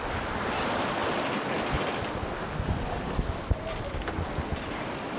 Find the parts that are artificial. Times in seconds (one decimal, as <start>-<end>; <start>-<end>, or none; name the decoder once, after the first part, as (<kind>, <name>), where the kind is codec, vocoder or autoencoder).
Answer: none